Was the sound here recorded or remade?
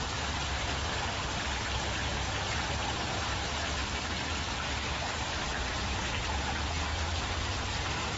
remade